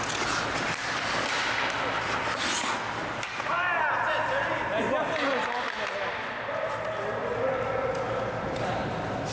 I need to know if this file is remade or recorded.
recorded